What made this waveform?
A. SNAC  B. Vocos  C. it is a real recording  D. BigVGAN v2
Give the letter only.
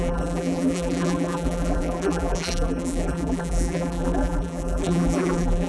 D